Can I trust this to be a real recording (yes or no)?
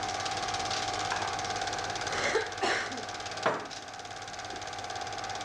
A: yes